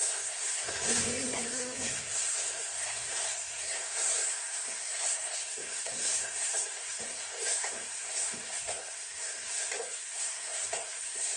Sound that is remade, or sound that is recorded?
remade